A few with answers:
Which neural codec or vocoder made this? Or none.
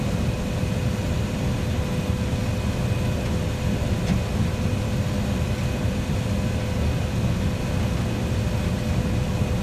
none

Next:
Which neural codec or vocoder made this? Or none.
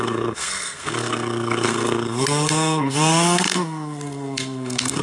codec, SNAC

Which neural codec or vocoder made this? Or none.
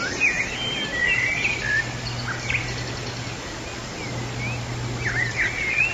none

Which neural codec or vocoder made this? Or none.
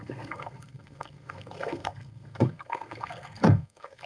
codec, SNAC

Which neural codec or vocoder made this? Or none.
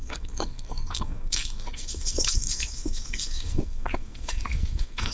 codec, SNAC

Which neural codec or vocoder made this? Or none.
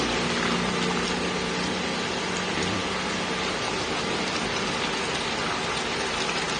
none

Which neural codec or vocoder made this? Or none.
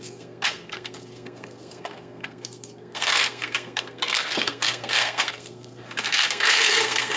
codec, SNAC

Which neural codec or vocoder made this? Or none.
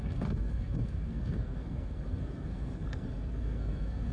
codec, SNAC